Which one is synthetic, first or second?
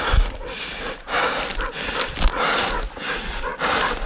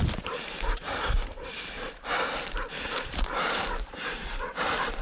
second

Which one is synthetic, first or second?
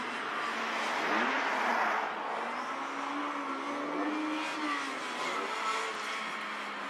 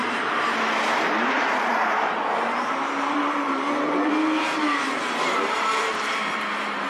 second